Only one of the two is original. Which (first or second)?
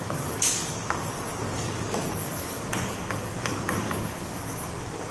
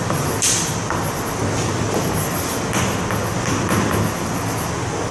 second